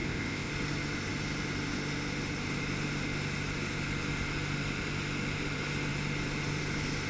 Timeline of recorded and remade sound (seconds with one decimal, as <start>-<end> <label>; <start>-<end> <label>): 0.0-0.5 remade; 0.5-7.1 recorded

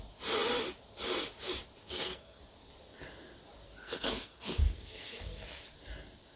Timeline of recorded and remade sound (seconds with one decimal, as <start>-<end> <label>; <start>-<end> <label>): 0.0-1.8 recorded; 1.8-2.4 remade; 2.4-3.8 recorded; 3.8-5.6 remade; 5.6-6.4 recorded